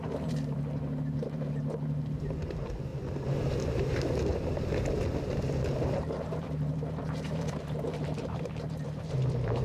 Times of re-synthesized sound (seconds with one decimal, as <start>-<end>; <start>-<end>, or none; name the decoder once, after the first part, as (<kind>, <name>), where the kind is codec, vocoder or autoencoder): 0.0-2.9 (vocoder, BigVGAN v2); 3.5-9.6